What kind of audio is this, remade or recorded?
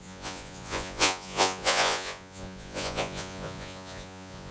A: remade